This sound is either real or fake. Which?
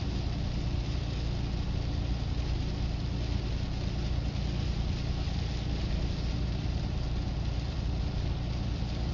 real